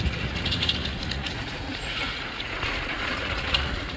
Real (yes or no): no